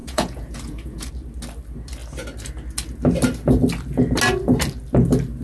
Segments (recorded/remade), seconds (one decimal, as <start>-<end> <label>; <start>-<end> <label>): 0.0-1.1 remade; 1.1-5.4 recorded